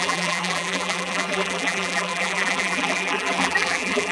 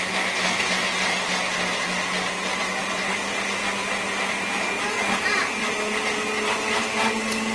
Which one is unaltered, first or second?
second